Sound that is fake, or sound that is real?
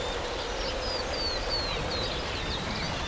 real